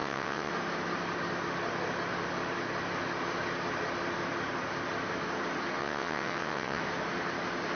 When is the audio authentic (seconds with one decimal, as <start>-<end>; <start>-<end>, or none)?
0.5-5.8; 6.8-7.8